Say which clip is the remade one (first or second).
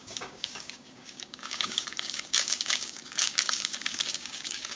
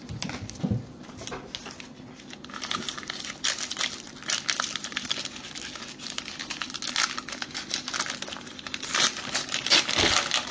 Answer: first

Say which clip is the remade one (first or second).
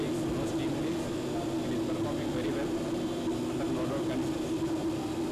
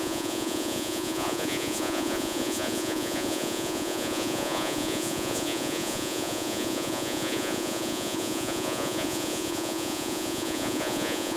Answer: second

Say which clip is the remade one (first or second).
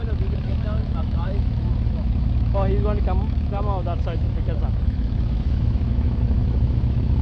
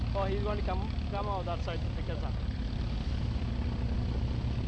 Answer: first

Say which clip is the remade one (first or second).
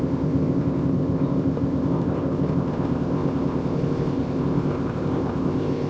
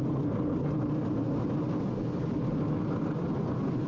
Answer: first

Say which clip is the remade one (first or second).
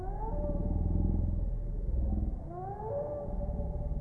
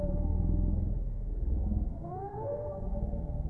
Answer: second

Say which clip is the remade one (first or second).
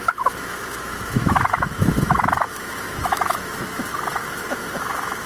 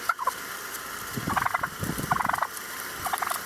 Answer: first